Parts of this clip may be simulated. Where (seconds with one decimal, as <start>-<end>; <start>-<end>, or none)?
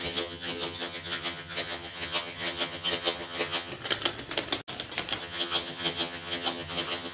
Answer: 0.0-3.7; 5.2-7.1